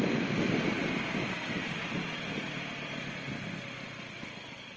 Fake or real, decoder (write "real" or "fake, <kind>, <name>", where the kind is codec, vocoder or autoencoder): real